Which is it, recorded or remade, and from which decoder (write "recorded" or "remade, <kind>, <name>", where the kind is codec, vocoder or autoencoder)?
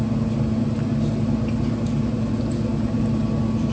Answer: recorded